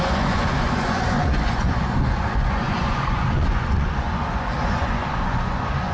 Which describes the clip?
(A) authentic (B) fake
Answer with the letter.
B